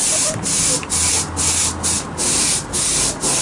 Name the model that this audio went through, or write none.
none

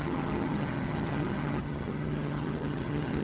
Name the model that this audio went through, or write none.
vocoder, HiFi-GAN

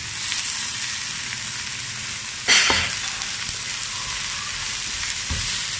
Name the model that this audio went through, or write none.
none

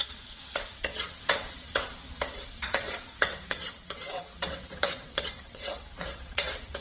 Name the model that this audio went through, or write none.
vocoder, WaveNeXt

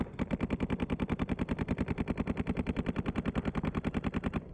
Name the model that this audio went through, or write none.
none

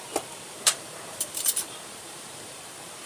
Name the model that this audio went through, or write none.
vocoder, BigVGAN v2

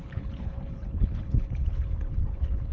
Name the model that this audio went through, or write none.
codec, HILCodec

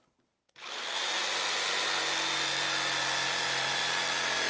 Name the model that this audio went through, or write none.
none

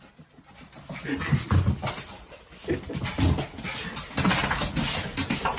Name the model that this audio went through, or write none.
none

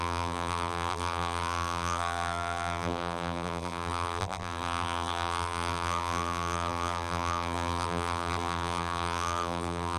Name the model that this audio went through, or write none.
vocoder, BigVGAN v2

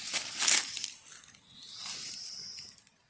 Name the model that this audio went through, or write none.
none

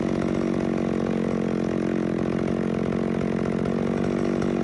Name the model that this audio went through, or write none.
none